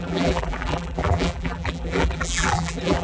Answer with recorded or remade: remade